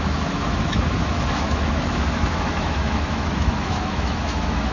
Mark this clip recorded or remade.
remade